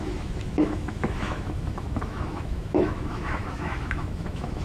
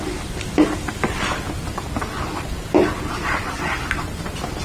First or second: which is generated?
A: first